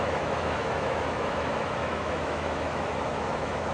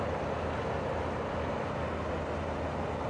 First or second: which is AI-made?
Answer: first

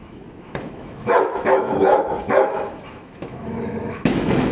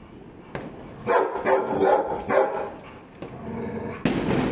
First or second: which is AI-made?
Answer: first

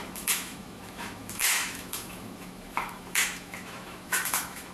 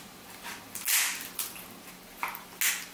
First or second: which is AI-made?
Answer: first